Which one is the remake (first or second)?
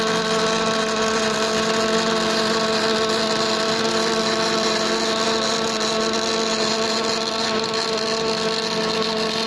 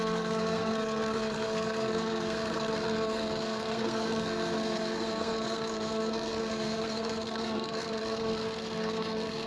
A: second